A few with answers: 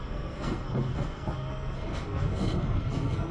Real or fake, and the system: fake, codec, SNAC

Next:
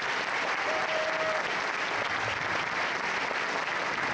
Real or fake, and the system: real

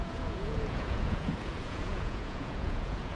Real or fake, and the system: fake, vocoder, Vocos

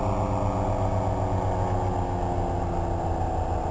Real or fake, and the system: real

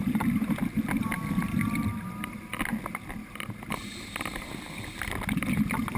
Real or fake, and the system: real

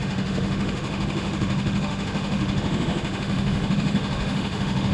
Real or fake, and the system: fake, autoencoder, DAC-VAE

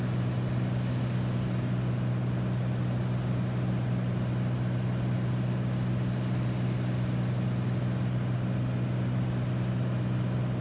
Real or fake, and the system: real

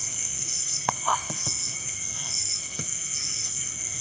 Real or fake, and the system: fake, codec, SNAC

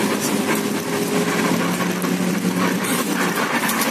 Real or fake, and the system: real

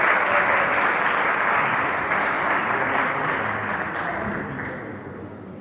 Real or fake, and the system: real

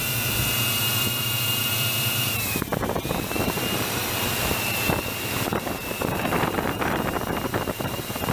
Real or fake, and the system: fake, vocoder, BigVGAN v2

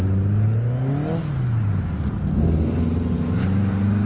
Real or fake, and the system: real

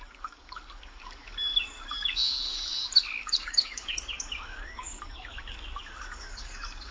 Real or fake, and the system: fake, codec, DAC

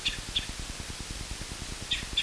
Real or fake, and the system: real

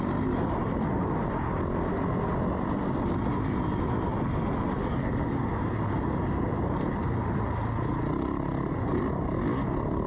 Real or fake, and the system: real